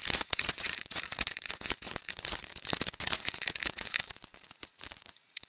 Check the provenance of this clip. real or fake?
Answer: fake